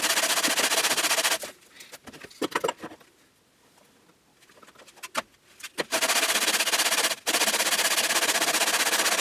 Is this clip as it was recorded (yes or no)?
yes